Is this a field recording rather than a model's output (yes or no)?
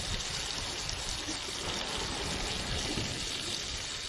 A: yes